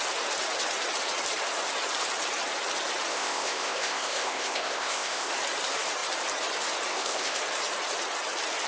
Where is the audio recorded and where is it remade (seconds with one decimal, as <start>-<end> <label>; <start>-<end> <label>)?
0.0-3.1 recorded; 3.1-5.3 remade; 5.3-6.9 recorded; 6.9-7.4 remade; 7.4-8.7 recorded